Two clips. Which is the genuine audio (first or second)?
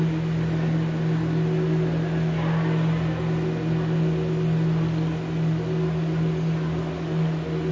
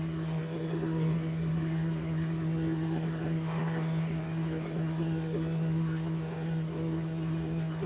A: first